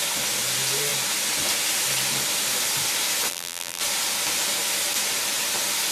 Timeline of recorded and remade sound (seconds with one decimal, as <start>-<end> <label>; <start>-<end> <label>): 0.0-3.3 recorded; 3.3-3.8 remade; 3.8-5.9 recorded